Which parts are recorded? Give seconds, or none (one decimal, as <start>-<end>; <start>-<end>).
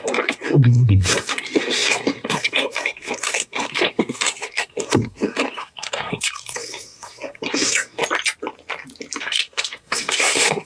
8.0-9.2